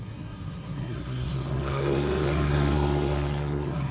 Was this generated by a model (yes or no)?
yes